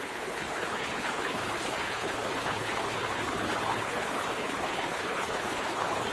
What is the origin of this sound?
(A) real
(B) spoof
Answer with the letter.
B